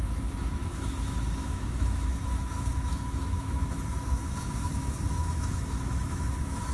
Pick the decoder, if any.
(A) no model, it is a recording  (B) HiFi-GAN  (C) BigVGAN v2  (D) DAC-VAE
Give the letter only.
D